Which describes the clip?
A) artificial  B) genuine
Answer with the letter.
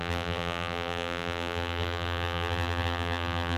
A